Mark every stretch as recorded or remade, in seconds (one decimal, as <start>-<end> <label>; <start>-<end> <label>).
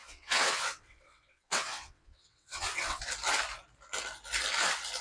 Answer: 0.0-3.0 remade; 3.0-5.0 recorded